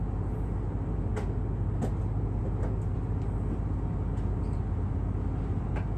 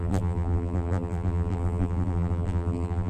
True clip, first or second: first